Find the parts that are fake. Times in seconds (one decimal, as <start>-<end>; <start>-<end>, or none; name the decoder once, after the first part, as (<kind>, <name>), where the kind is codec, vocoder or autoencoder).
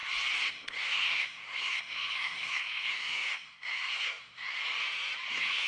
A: 0.5-4.6 (codec, SNAC); 5.3-5.7